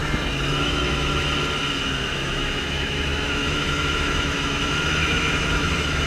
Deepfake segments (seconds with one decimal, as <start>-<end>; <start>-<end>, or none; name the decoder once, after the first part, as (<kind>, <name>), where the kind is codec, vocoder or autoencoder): 0.5-1.2 (autoencoder, DAC-VAE); 2.1-6.1